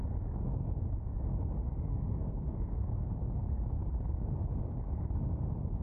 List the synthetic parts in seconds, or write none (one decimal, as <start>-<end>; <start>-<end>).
1.9-3.1